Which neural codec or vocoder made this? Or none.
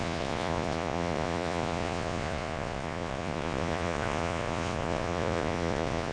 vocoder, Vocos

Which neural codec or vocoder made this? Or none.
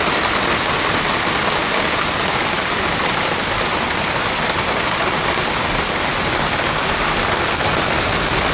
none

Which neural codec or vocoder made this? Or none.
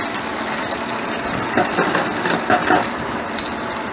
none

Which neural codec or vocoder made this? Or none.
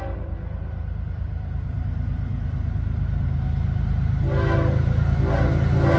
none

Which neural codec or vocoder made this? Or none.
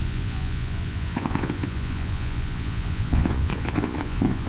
vocoder, Vocos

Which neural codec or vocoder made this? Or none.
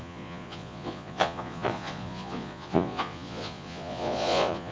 vocoder, Vocos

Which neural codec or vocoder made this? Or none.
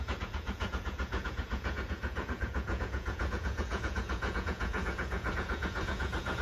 vocoder, Vocos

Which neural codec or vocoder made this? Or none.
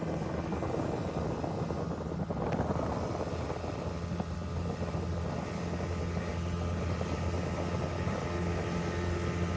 none